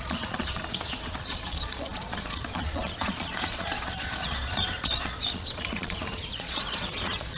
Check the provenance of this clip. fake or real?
fake